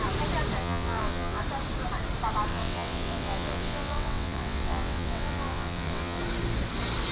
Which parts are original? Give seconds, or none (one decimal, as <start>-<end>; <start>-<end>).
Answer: 0.0-0.6; 1.4-2.5; 6.2-7.1